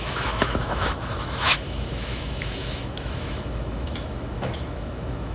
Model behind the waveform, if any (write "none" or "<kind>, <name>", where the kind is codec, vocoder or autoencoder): autoencoder, DAC-VAE